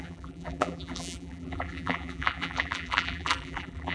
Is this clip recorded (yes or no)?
no